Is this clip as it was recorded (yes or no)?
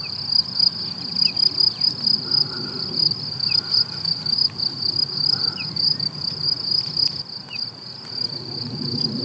yes